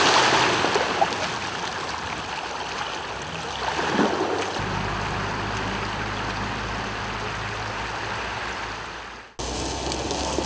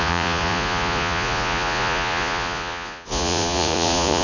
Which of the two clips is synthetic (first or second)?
second